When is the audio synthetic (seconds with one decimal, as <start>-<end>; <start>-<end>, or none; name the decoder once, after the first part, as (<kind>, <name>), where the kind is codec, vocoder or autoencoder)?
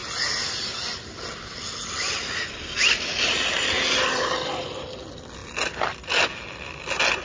none